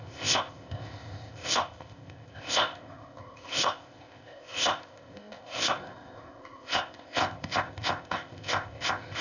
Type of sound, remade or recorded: remade